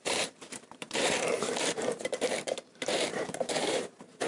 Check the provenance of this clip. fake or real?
fake